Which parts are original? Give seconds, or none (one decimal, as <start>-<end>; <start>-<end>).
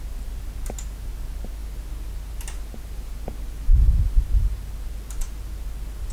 0.0-6.1